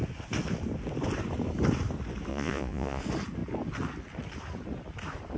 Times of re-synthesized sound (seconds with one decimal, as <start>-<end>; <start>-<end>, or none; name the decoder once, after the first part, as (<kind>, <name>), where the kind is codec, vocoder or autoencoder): 2.3-3.0 (vocoder, Vocos)